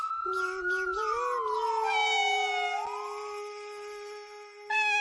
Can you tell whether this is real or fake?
real